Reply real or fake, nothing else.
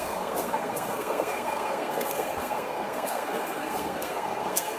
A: fake